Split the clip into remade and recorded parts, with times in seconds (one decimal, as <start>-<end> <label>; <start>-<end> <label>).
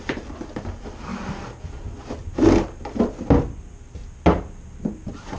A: 0.0-5.4 recorded